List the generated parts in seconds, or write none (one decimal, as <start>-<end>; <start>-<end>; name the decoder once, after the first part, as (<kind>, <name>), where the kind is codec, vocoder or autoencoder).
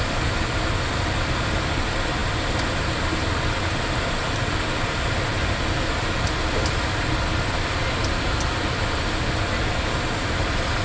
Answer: none